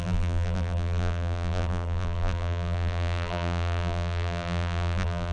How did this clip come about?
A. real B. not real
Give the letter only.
B